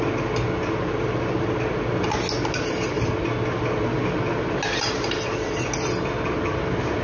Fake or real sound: real